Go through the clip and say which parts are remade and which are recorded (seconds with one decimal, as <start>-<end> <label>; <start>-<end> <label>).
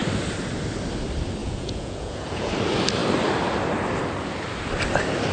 0.0-1.4 recorded; 1.4-2.5 remade; 2.5-5.3 recorded